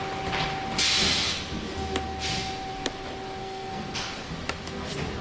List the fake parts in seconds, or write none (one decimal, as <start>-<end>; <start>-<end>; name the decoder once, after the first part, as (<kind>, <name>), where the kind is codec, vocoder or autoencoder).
3.4-4.3 (codec, SNAC)